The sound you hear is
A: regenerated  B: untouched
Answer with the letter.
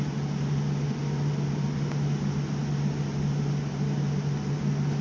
B